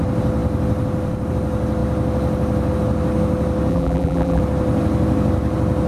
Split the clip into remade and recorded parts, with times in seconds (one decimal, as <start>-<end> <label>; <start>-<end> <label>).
0.0-3.7 recorded; 3.7-4.4 remade; 4.4-5.9 recorded